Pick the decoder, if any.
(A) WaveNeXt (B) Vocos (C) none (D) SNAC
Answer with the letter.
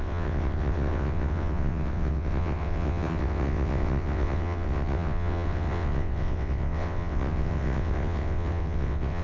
A